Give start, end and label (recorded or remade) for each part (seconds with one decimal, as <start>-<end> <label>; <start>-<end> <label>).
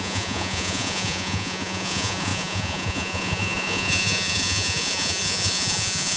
0.0-6.2 remade